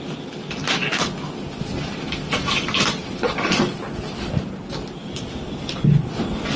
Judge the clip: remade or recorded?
recorded